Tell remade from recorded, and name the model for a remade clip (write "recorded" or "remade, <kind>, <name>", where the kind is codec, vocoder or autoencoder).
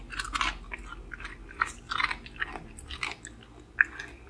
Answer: recorded